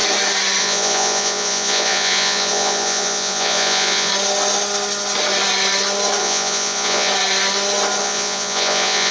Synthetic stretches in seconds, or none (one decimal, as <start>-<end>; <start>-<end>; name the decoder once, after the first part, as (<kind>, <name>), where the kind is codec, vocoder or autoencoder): 0.6-4.1 (vocoder, Vocos); 6.2-7.1; 8.0-9.1